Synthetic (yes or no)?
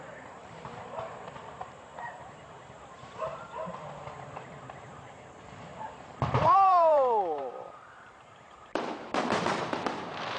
yes